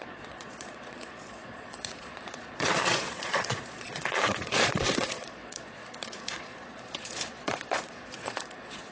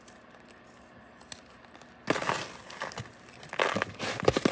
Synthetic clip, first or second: first